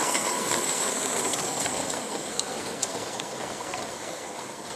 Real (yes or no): no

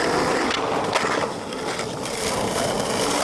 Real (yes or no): yes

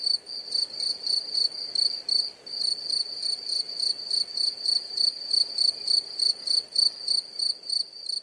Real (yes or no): yes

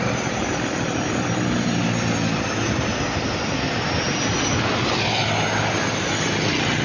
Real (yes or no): yes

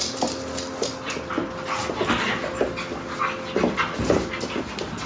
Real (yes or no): yes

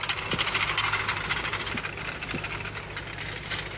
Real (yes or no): yes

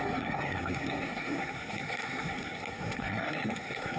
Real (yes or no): no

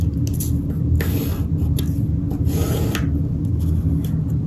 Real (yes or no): yes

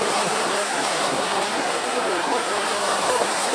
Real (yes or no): no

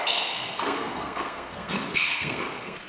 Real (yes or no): no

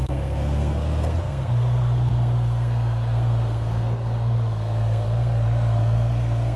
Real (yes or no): no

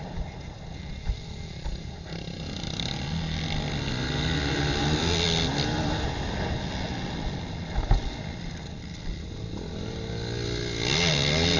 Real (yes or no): yes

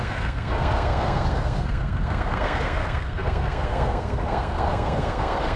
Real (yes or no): no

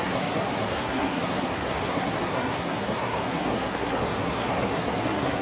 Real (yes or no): no